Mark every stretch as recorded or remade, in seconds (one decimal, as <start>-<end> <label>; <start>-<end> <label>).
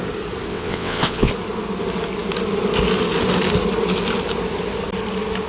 0.0-0.5 recorded; 0.5-1.3 remade; 1.3-5.5 recorded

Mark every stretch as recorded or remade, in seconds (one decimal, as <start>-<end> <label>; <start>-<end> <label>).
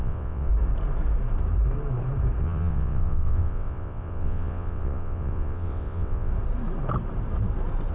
0.0-0.5 remade; 0.5-2.4 recorded; 2.4-6.3 remade; 6.3-7.9 recorded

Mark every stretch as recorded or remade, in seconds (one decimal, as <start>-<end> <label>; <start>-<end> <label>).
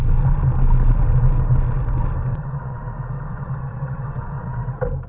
0.0-2.3 recorded; 2.3-2.8 remade; 2.8-3.3 recorded; 3.3-4.6 remade; 4.6-5.1 recorded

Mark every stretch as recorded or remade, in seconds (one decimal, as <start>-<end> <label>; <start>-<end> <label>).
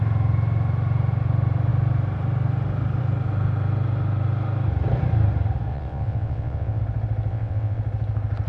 0.0-5.7 recorded; 5.7-6.8 remade; 6.8-7.3 recorded; 7.3-7.8 remade; 7.8-8.5 recorded